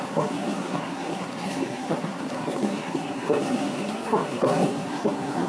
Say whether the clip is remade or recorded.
remade